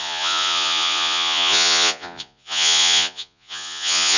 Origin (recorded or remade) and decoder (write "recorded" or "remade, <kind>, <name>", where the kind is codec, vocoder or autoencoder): remade, vocoder, Vocos